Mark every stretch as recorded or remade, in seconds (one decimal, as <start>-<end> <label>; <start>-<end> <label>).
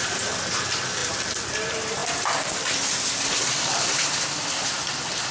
0.0-2.0 remade; 2.0-3.0 recorded; 3.0-5.3 remade